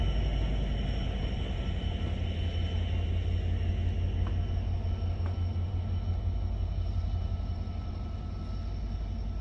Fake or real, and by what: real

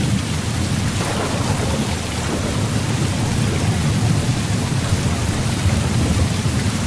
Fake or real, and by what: real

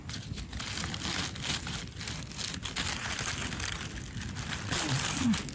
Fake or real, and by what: real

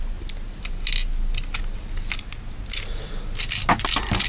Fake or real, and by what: real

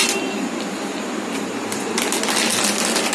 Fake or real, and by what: real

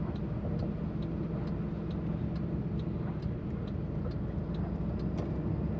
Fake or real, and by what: real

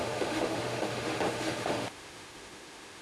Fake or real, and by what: fake, autoencoder, DAC-VAE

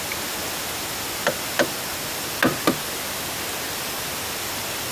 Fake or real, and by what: real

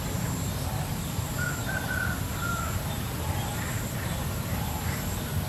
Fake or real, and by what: real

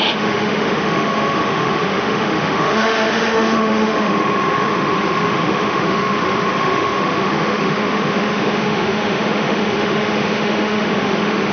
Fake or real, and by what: fake, autoencoder, DAC-VAE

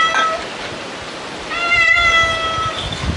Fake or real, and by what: real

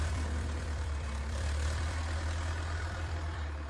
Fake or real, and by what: fake, vocoder, BigVGAN v2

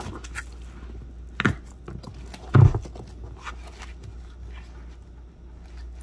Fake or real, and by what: real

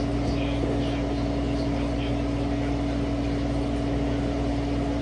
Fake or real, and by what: real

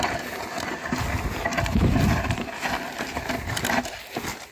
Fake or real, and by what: real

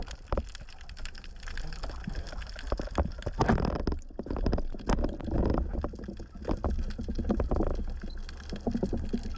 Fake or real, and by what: real